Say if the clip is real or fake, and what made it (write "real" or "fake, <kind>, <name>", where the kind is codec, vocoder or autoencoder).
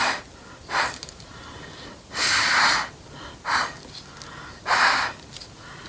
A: real